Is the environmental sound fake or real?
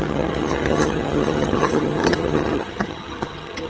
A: fake